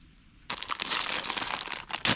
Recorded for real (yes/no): yes